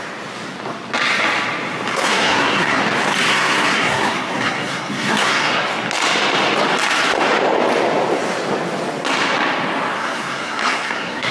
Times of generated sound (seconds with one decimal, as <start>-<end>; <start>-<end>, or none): 1.9-2.8; 3.3-5.6; 9.9-11.3